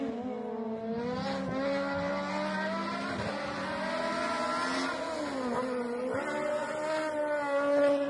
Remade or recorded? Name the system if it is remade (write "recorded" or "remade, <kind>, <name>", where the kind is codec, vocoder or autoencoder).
recorded